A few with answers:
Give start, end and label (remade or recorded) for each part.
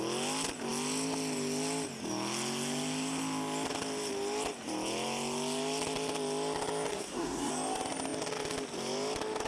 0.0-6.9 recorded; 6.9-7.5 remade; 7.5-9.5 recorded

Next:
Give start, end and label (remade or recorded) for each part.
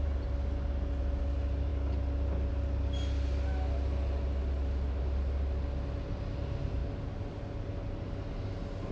0.0-8.9 recorded